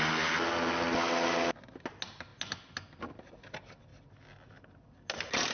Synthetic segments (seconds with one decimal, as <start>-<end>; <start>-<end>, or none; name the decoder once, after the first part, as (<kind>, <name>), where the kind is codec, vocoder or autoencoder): none